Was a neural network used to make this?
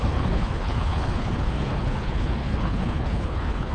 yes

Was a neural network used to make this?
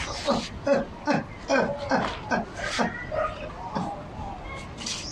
no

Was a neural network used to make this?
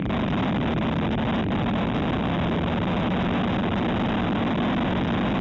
no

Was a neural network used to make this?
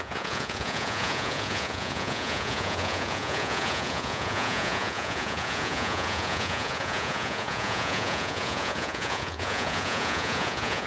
yes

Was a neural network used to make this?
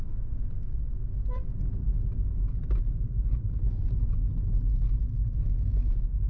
no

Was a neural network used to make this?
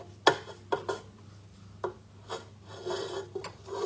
no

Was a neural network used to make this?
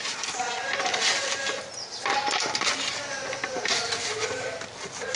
yes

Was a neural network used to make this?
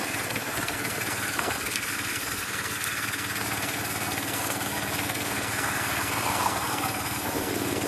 yes